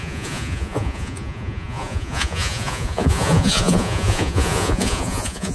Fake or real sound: fake